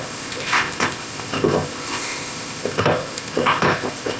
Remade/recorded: remade